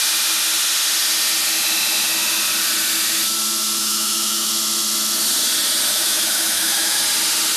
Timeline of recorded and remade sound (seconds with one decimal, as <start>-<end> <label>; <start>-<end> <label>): 0.0-3.8 recorded; 3.8-4.5 remade; 4.5-5.9 recorded; 5.9-7.0 remade; 7.0-7.6 recorded